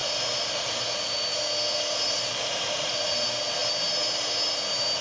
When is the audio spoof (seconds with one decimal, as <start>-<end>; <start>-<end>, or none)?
none